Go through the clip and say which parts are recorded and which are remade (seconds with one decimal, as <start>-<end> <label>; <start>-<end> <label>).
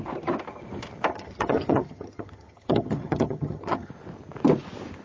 0.0-1.1 recorded; 1.1-3.9 remade; 3.9-5.0 recorded